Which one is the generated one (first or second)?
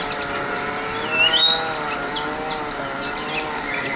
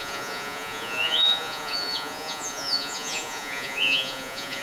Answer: second